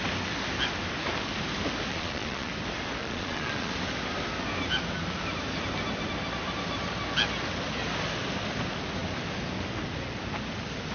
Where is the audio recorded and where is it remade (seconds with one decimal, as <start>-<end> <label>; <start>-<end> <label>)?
0.0-1.9 recorded; 1.9-2.5 remade; 2.5-3.0 recorded; 3.0-3.7 remade; 3.7-10.9 recorded